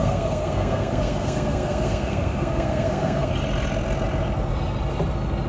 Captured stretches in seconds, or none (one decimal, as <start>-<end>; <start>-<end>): 3.3-5.5